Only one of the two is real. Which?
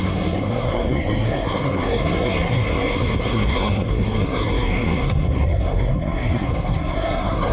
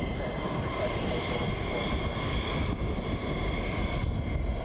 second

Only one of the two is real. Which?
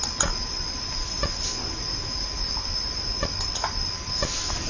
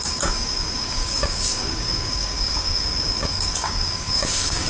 first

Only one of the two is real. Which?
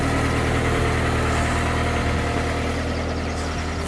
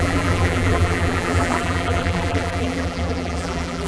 first